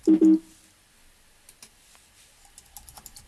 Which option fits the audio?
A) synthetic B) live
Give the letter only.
B